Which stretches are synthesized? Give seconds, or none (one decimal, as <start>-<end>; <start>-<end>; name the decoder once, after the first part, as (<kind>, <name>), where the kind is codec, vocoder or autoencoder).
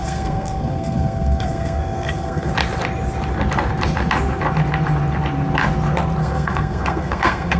0.0-2.5 (codec, SNAC); 6.2-7.6